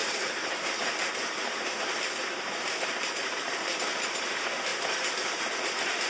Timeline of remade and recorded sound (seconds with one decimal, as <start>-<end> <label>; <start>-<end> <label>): 0.0-3.7 remade; 3.7-6.1 recorded